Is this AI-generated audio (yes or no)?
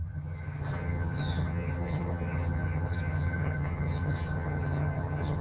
yes